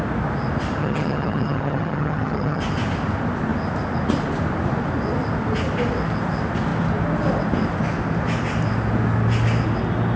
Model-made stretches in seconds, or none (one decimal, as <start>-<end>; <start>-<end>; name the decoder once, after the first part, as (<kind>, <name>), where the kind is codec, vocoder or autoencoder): 0.8-2.6 (vocoder, HiFi-GAN)